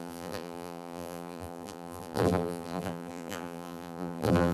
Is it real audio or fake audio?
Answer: fake